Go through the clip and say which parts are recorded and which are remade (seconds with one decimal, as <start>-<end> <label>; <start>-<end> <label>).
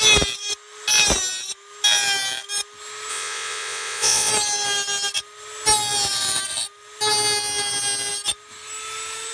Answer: 0.0-3.1 recorded; 3.1-4.3 remade; 4.3-9.3 recorded